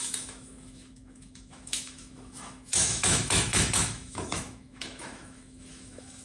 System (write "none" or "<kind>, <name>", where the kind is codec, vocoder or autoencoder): autoencoder, DAC-VAE